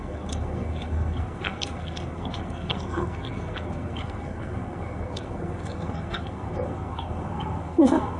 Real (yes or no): no